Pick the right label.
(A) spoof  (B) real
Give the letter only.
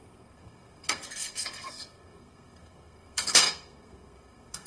A